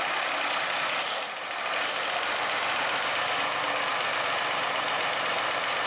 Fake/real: real